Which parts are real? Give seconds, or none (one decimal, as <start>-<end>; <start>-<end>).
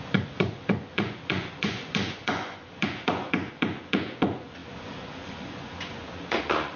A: none